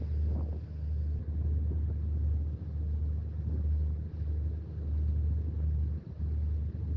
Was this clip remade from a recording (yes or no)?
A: no